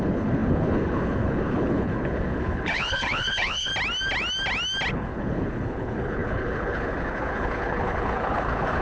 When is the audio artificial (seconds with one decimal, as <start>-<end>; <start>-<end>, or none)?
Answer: 0.0-3.7; 4.9-8.8